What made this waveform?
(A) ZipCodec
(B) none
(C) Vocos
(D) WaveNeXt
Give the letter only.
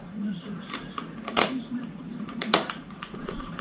C